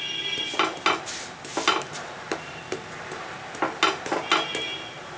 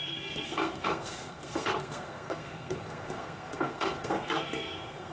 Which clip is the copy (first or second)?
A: second